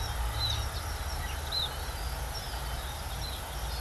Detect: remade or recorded recorded